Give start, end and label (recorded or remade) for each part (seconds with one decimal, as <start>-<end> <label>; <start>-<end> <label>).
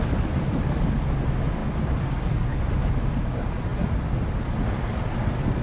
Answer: 0.0-5.6 recorded